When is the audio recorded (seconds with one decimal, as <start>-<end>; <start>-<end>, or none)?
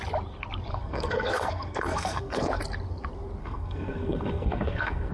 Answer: 0.0-0.7; 2.6-3.4